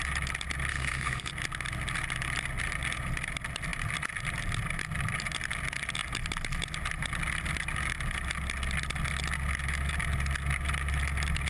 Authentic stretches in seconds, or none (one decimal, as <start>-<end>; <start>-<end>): 0.0-0.7; 1.3-11.5